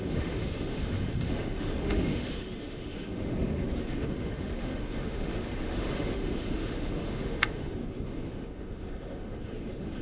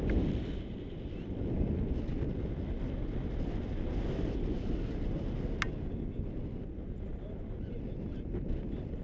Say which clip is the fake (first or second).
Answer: first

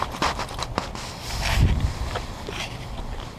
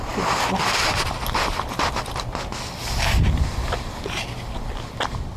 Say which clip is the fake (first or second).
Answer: first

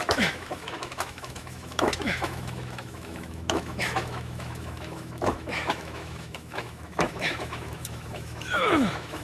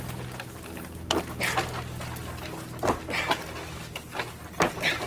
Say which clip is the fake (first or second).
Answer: first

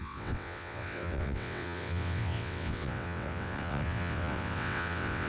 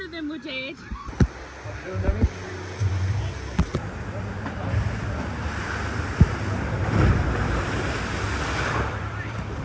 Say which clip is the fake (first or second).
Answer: first